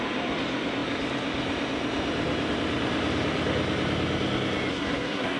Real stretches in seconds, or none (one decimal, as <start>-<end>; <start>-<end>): 0.0-4.7